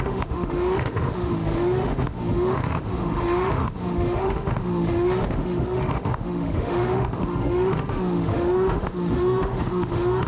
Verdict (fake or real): fake